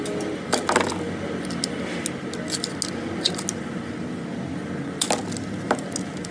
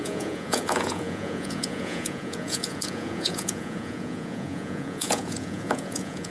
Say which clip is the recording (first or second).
first